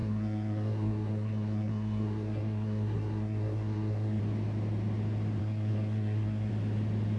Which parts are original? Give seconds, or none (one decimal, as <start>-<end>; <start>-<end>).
4.2-5.4; 6.5-7.2